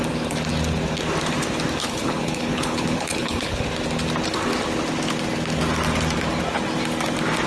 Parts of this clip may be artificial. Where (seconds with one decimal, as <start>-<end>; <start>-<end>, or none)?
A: 1.8-3.6